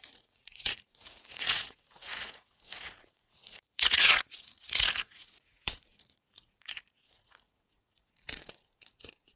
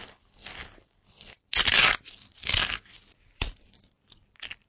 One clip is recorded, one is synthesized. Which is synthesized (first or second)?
first